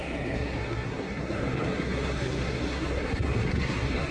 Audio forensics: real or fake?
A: fake